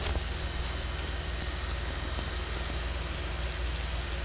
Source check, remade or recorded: recorded